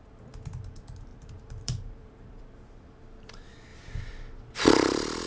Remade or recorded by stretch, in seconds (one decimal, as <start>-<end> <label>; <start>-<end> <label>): 0.0-1.1 recorded; 1.1-2.4 remade; 2.4-5.3 recorded